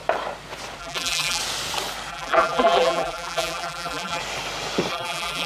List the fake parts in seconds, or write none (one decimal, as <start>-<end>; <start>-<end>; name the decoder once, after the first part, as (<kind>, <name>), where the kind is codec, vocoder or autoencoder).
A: 0.8-1.4 (vocoder, BigVGAN v2); 2.1-4.2; 4.9-5.5